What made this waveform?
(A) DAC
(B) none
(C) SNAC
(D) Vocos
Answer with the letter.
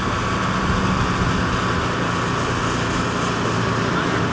B